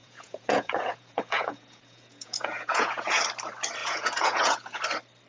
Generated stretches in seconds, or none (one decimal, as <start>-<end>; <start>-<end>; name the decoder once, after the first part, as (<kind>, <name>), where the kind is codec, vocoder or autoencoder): 0.0-3.2 (vocoder, Vocos); 3.8-4.8